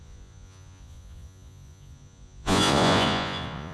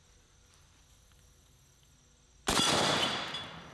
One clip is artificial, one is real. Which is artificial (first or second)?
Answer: first